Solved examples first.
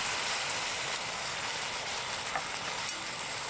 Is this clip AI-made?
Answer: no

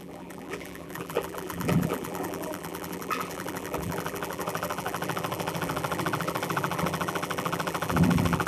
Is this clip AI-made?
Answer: yes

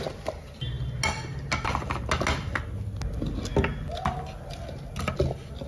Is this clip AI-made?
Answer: no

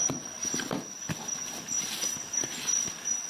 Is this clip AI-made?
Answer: no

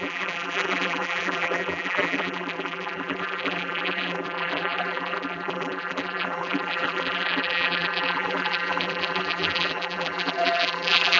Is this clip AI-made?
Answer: yes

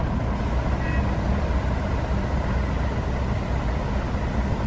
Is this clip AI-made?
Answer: no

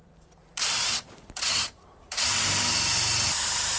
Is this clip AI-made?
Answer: yes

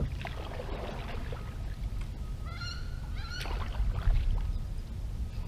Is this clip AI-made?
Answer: no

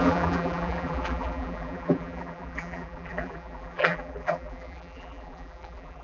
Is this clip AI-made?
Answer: yes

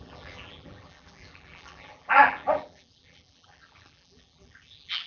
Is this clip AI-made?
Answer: yes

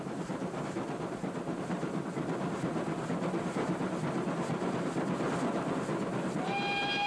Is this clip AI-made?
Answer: no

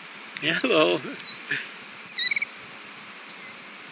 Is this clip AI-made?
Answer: no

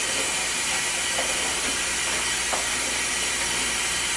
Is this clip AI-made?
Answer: no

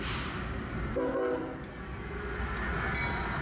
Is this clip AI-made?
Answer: no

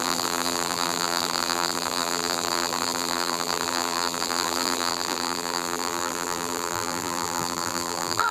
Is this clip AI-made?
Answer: yes